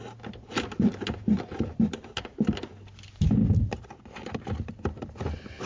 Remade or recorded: recorded